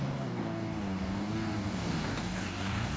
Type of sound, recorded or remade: remade